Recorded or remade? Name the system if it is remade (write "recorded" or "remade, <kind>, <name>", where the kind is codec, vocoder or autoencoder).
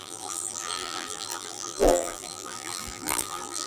remade, vocoder, BigVGAN v2